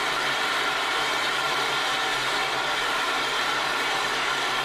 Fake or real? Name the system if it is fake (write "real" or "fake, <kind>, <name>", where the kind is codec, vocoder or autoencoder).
fake, vocoder, BigVGAN v2